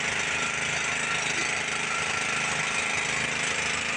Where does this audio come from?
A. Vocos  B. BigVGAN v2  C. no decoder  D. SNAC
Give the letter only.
C